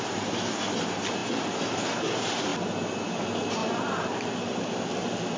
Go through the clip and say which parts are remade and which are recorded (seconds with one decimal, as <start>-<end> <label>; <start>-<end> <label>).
0.0-5.4 recorded